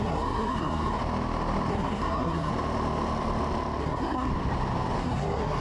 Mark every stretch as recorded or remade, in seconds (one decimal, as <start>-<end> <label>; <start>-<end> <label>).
0.0-1.0 remade; 1.0-1.7 recorded; 1.7-2.5 remade; 2.5-3.8 recorded; 3.8-4.3 remade; 4.3-5.0 recorded; 5.0-5.6 remade